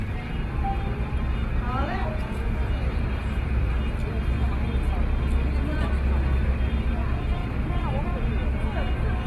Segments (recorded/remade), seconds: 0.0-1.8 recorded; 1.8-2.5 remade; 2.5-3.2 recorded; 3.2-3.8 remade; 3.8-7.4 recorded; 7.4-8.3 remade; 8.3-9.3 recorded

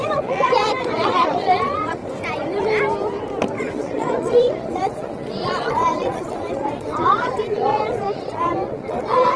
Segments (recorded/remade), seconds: 0.0-2.0 remade; 2.0-3.6 recorded; 3.6-9.4 remade

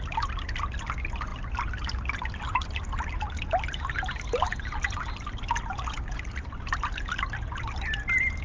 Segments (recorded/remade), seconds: 0.0-8.4 recorded